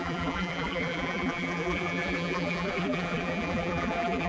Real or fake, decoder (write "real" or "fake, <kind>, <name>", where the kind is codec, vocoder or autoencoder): fake, vocoder, BigVGAN v2